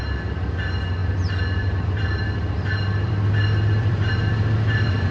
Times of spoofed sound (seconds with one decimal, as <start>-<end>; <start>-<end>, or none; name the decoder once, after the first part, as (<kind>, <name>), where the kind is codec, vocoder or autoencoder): 1.0-4.1 (vocoder, BigVGAN v2)